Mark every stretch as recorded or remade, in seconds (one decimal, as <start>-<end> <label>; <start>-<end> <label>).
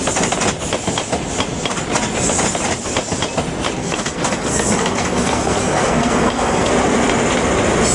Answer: 0.0-3.8 recorded; 3.8-6.7 remade; 6.7-7.9 recorded